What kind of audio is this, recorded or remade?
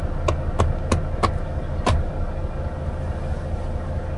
recorded